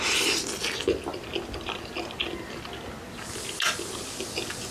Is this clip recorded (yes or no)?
yes